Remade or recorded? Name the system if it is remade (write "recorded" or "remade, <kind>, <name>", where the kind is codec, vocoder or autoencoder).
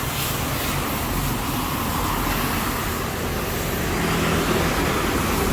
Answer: recorded